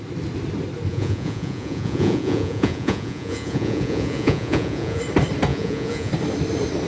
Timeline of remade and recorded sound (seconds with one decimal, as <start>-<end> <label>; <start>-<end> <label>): 0.0-0.9 recorded; 0.9-5.0 remade; 5.0-5.5 recorded; 5.5-6.1 remade; 6.1-6.9 recorded